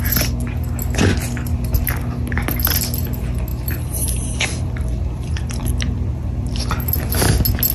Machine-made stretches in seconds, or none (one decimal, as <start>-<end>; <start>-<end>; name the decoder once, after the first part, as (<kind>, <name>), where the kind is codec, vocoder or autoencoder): 3.5-7.1 (vocoder, BigVGAN v2)